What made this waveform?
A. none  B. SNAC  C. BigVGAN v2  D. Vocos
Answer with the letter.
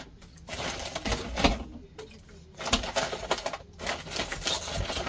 A